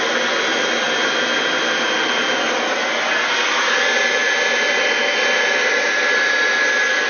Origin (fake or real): real